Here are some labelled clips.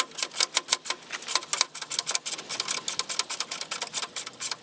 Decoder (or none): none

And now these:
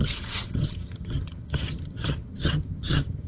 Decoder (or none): vocoder, HiFi-GAN